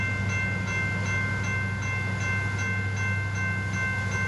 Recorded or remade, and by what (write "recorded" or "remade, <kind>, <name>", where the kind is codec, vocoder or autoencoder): recorded